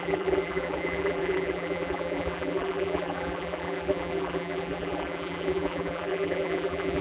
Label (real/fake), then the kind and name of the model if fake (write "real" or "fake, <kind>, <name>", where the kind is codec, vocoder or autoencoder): fake, vocoder, BigVGAN v2